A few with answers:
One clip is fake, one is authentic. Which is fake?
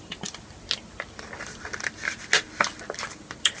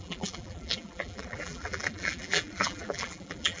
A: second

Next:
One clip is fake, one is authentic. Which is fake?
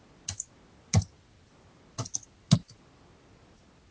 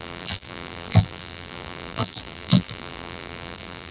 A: second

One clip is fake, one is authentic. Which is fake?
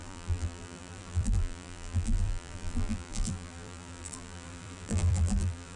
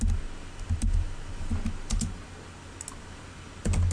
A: first